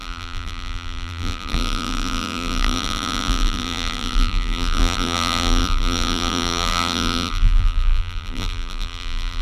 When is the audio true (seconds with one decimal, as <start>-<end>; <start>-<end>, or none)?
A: none